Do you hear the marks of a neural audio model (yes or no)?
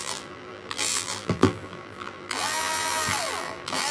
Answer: yes